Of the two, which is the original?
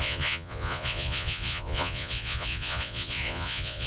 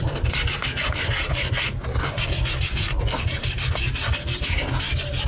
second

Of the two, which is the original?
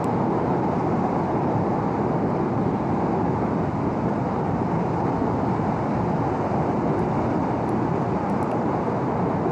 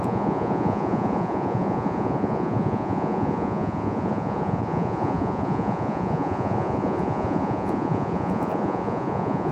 first